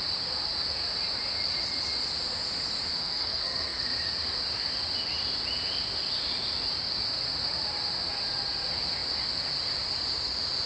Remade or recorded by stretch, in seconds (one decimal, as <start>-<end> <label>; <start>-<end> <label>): 0.0-2.9 recorded; 2.9-3.8 remade; 3.8-10.7 recorded